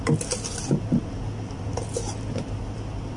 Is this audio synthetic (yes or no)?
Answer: no